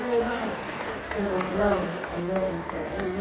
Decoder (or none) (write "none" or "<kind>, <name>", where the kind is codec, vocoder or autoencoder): codec, DAC